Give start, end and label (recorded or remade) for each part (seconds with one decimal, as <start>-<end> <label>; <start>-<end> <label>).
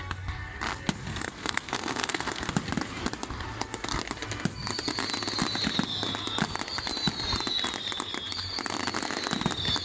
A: 0.0-1.1 recorded; 1.1-2.5 remade; 2.5-9.8 recorded